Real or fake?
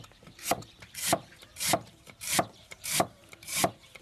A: fake